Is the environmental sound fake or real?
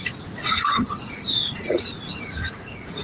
fake